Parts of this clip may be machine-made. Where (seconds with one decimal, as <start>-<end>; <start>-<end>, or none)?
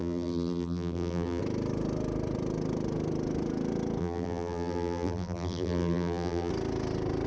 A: 0.0-1.4; 4.0-6.5